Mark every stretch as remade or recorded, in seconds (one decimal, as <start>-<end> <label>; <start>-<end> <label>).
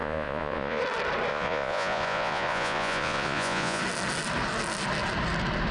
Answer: 0.0-0.8 remade; 0.8-1.3 recorded; 1.3-3.8 remade; 3.8-5.7 recorded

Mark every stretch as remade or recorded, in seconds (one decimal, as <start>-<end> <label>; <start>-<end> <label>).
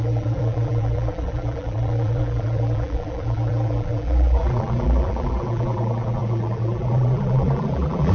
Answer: 0.0-8.1 remade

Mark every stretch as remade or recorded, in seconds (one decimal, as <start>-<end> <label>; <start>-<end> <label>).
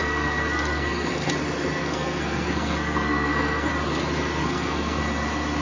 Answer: 0.0-1.3 remade; 1.3-1.8 recorded; 1.8-3.7 remade; 3.7-4.4 recorded; 4.4-5.0 remade; 5.0-5.6 recorded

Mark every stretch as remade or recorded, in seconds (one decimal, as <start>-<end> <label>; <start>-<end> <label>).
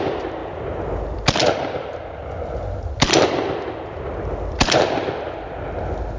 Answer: 0.0-6.2 recorded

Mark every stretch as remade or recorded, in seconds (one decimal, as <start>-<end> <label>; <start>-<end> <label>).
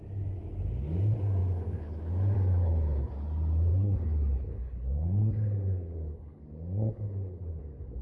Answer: 0.0-1.4 recorded; 1.4-2.1 remade; 2.1-2.6 recorded; 2.6-3.1 remade; 3.1-3.7 recorded; 3.7-6.4 remade; 6.4-6.9 recorded; 6.9-7.6 remade; 7.6-8.0 recorded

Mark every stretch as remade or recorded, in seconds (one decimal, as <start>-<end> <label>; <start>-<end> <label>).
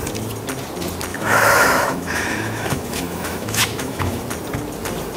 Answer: 0.0-1.1 recorded; 1.1-4.2 remade; 4.2-5.2 recorded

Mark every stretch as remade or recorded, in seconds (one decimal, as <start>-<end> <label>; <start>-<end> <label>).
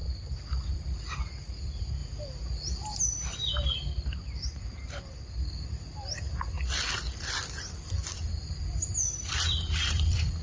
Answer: 0.0-2.0 remade; 2.0-3.0 recorded; 3.0-3.4 remade; 3.4-8.0 recorded; 8.0-10.4 remade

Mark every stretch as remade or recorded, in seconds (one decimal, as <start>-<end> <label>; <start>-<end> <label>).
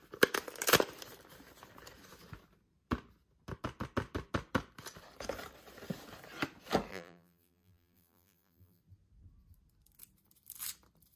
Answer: 0.0-6.9 recorded; 6.9-8.8 remade; 8.8-11.2 recorded